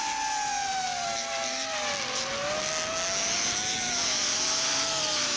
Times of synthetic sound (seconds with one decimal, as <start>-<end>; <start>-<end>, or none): 4.0-5.4